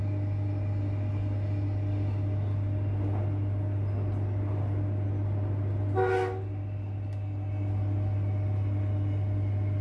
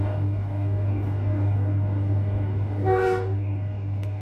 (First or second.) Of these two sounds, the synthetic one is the second